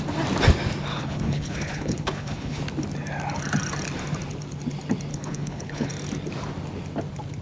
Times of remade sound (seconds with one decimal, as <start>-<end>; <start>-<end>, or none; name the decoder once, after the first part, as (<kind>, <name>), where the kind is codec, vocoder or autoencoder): 0.9-2.6 (codec, HILCodec); 5.1-5.9